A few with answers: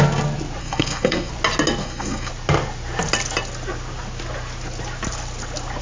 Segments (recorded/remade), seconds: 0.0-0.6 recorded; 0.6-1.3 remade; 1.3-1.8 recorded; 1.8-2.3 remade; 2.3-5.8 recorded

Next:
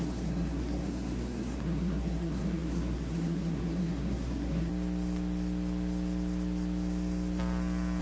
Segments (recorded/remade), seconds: 0.0-4.7 remade; 4.7-8.0 recorded